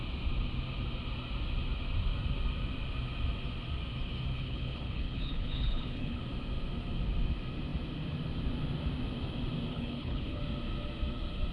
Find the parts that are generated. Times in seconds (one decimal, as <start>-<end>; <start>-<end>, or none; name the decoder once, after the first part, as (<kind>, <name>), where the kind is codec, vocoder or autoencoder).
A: 4.3-6.2 (codec, HILCodec); 9.7-10.4